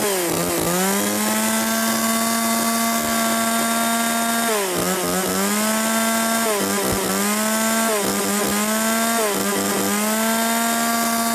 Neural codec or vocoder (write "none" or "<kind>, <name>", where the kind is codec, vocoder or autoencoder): none